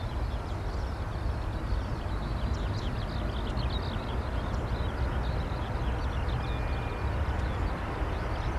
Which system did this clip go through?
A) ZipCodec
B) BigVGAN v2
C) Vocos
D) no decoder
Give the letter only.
D